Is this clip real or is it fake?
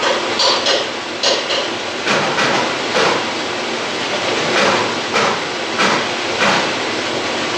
real